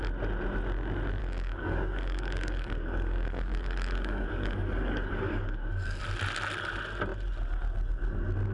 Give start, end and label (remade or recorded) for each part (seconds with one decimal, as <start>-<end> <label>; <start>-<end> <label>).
0.0-1.2 recorded; 1.2-6.0 remade; 6.0-8.5 recorded